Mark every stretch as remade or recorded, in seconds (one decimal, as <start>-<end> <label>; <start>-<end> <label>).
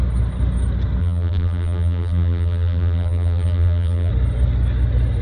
0.0-1.0 recorded; 1.0-4.1 remade; 4.1-5.2 recorded